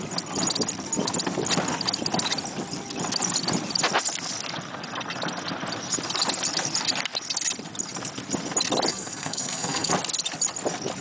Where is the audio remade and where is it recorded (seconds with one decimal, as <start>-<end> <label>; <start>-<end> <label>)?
0.0-8.9 recorded; 8.9-9.9 remade; 9.9-11.0 recorded